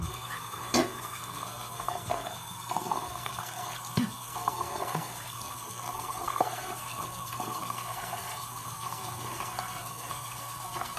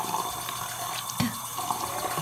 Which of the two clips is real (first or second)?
second